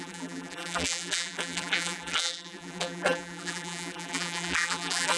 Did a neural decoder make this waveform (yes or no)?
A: yes